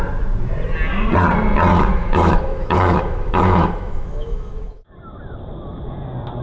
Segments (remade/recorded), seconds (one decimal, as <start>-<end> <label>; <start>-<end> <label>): 0.0-1.7 recorded; 1.7-4.9 remade; 4.9-6.4 recorded